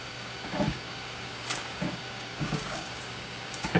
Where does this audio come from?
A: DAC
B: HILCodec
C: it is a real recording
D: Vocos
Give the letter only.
A